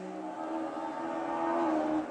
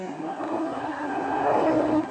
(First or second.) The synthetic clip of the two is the second